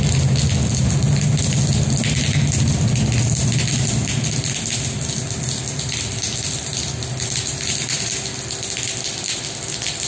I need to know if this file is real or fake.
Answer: real